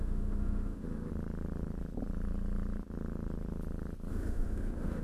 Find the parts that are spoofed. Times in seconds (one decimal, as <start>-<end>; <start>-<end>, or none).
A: 0.0-1.1; 4.1-5.0